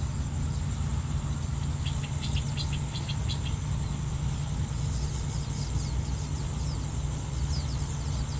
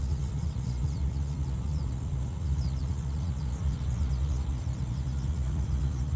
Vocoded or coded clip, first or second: second